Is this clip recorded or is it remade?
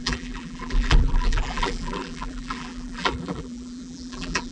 remade